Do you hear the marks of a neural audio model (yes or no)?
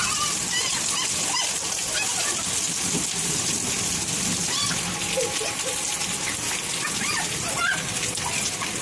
no